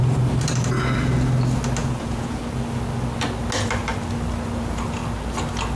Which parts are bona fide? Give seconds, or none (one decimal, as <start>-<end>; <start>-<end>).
0.0-1.8; 2.4-5.8